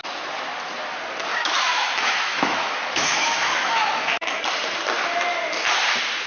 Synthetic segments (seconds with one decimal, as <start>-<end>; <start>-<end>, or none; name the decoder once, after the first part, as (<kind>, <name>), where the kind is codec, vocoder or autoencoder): 1.3-4.4 (autoencoder, DAC-VAE)